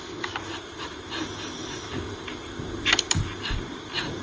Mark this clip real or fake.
real